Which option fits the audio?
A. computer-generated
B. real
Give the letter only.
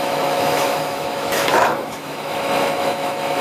A